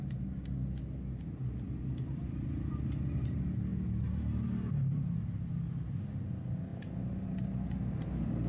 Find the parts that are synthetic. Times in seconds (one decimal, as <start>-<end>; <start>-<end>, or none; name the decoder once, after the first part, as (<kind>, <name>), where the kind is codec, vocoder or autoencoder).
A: none